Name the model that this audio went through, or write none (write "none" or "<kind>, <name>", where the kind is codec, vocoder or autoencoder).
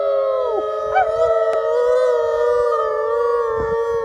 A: none